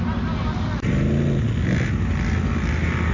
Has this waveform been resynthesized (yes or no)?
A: no